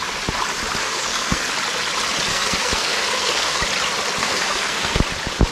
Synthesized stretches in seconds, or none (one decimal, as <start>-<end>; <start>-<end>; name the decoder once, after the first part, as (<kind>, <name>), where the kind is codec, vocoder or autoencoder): 0.8-1.5 (codec, SNAC); 2.3-3.6; 4.2-5.0